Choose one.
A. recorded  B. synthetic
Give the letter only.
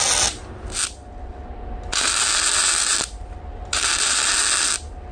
A